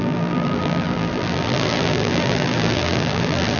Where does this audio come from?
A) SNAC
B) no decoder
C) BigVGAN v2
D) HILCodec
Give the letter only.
C